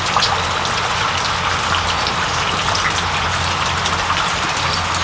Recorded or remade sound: recorded